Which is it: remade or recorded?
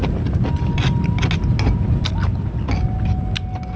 recorded